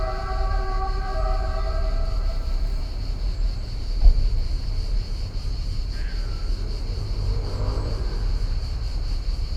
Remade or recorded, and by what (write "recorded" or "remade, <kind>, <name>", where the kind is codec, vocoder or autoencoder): remade, vocoder, BigVGAN v2